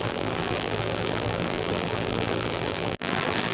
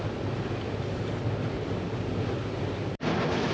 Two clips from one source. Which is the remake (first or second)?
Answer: first